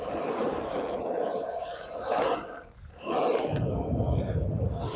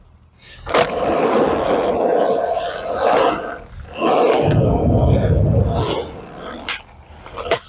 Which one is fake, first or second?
first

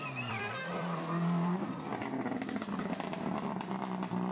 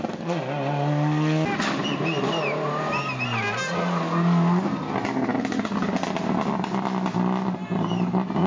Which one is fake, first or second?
first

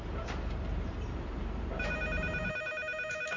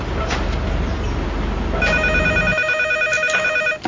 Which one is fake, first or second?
first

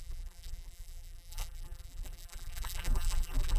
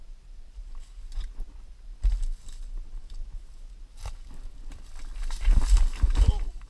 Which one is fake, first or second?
first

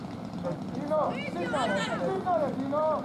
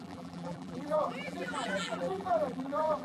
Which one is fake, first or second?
second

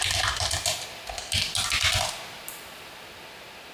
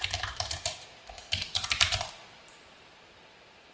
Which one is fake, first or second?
second